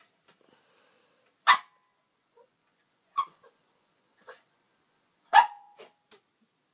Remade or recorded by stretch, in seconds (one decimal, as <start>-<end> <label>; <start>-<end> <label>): 0.0-1.9 recorded; 1.9-5.8 remade; 5.8-6.7 recorded